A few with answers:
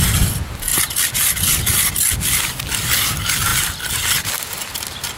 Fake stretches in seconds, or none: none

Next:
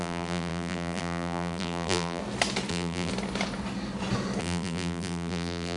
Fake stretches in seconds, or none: 0.0-2.2 (vocoder, BigVGAN v2); 2.7-3.1; 4.4-5.8

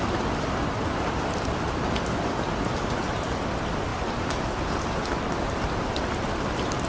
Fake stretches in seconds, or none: 3.9-4.8 (vocoder, BigVGAN v2)

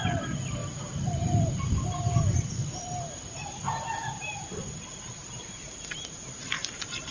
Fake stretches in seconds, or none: 0.6-1.6 (vocoder, BigVGAN v2); 2.6-7.1

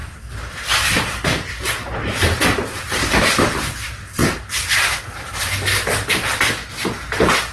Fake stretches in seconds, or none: 0.0-3.2 (vocoder, BigVGAN v2)

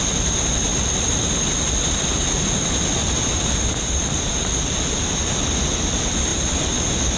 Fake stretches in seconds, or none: 0.7-1.3 (vocoder, BigVGAN v2); 3.0-5.3; 6.3-7.2